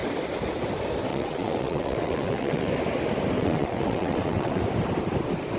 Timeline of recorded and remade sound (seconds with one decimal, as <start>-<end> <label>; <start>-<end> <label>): 0.0-1.1 recorded; 1.1-2.7 remade; 2.7-3.4 recorded; 3.4-4.6 remade; 4.6-5.6 recorded